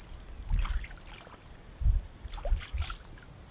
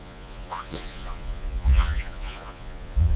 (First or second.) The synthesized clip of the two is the second